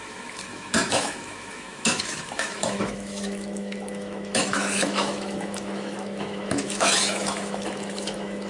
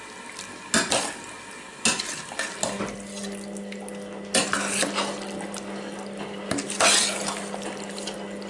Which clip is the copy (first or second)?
first